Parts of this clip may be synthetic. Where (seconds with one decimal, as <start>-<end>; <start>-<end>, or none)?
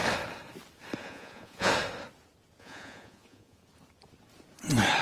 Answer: 1.0-1.7; 2.6-3.6